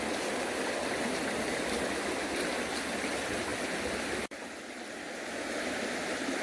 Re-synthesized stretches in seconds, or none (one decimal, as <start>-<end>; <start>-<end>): none